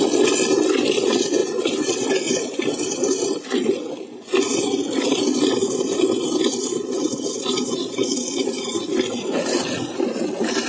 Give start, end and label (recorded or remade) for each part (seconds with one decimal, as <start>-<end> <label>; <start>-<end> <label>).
0.0-10.7 recorded